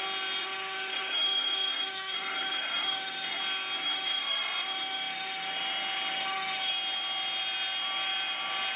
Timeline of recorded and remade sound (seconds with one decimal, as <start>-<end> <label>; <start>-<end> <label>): 0.0-0.4 recorded; 0.4-3.4 remade; 3.4-3.8 recorded; 3.8-5.6 remade; 5.6-6.1 recorded; 6.1-6.7 remade; 6.7-8.8 recorded